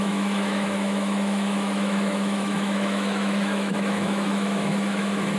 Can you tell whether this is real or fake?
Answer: fake